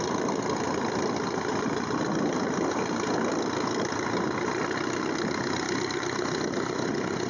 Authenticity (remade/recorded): recorded